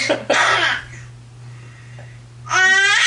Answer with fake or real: real